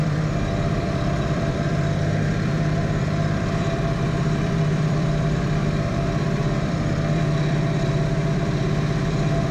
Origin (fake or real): fake